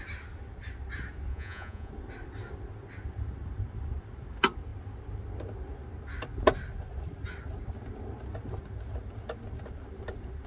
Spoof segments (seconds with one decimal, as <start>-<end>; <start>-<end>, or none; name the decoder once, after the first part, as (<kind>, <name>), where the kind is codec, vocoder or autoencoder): 1.3-1.9 (vocoder, Vocos)